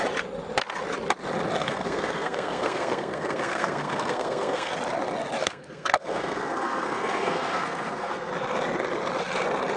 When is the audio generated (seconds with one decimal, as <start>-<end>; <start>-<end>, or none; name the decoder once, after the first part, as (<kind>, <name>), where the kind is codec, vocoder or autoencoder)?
1.6-4.7 (codec, SNAC); 5.4-8.3